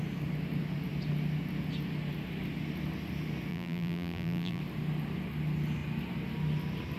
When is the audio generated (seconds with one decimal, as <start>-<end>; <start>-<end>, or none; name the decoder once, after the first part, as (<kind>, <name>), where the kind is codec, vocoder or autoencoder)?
3.5-4.6 (vocoder, BigVGAN v2)